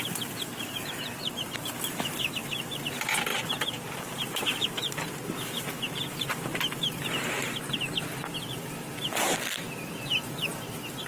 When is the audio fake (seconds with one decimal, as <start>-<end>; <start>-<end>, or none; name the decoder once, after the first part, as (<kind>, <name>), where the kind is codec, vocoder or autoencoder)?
3.3-5.6 (vocoder, BigVGAN v2)